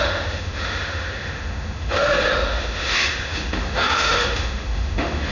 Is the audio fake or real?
fake